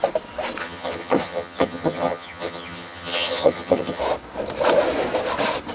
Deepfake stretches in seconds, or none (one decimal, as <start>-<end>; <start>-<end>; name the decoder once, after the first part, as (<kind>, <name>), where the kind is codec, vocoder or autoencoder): 0.6-4.0 (vocoder, HiFi-GAN)

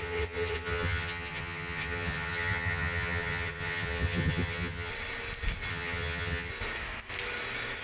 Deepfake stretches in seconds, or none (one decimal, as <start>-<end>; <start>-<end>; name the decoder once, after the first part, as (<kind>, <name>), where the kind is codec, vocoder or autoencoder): 0.0-4.9 (vocoder, HiFi-GAN); 5.7-6.5

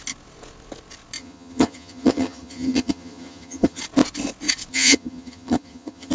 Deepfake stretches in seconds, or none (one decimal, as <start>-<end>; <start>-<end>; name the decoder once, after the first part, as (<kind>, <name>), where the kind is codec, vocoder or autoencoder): 1.2-3.8 (vocoder, HiFi-GAN); 4.7-6.1